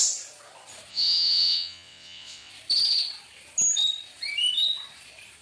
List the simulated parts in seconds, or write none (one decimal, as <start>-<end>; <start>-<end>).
0.9-2.5